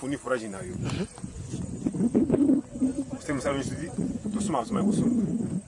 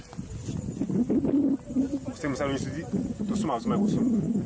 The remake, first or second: first